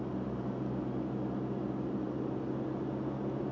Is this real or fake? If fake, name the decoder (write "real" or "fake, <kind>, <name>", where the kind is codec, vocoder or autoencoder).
real